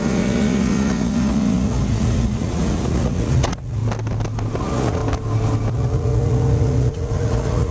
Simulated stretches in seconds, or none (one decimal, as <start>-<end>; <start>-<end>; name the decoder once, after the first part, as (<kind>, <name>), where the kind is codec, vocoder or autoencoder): 0.0-3.8 (vocoder, Vocos); 4.6-5.0; 5.7-7.7